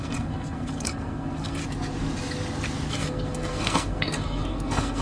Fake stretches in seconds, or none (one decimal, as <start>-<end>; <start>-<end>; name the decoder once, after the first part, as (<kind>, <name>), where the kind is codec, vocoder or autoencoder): 0.0-1.6 (codec, SNAC); 2.9-5.0